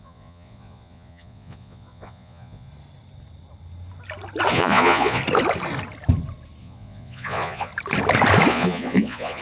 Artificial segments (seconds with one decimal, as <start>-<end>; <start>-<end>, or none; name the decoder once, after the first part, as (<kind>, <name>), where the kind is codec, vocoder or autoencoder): 0.0-2.7 (vocoder, Vocos); 4.5-5.2; 6.6-7.7; 8.5-9.4